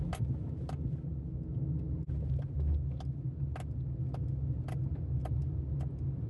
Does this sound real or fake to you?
real